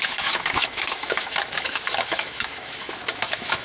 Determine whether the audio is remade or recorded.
remade